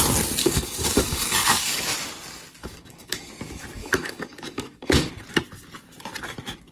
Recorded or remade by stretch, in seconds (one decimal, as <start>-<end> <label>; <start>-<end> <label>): 0.0-0.4 recorded; 0.4-1.8 remade; 1.8-2.6 recorded; 2.6-3.3 remade; 3.3-3.8 recorded; 3.8-5.1 remade; 5.1-6.7 recorded